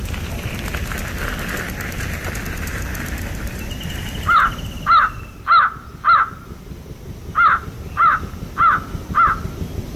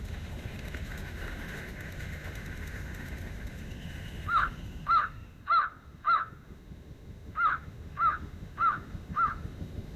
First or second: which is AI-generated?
second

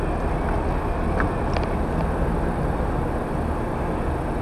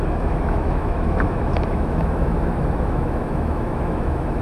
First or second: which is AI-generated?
second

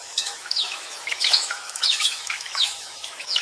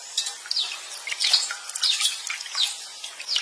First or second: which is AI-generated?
first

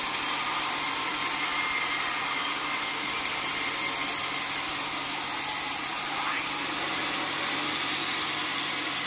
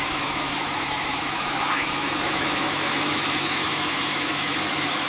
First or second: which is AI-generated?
second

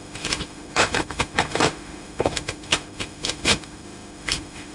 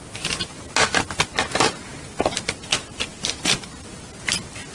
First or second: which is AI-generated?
first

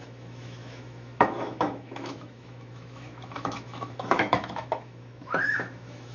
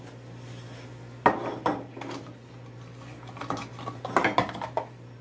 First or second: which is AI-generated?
first